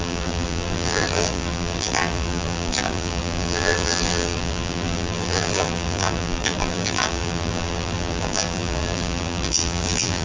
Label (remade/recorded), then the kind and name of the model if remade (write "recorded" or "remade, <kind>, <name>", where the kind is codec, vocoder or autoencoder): remade, vocoder, BigVGAN v2